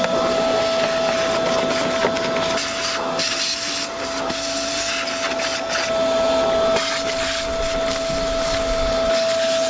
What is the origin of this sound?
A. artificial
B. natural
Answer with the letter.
B